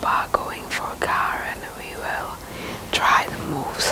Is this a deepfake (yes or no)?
no